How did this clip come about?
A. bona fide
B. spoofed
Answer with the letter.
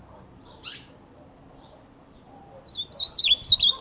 A